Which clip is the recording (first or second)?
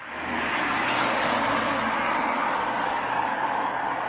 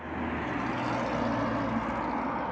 second